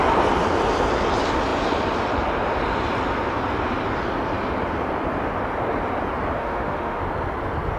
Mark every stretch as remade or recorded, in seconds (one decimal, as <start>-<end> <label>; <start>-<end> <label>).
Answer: 0.0-6.4 recorded; 6.4-7.0 remade; 7.0-7.8 recorded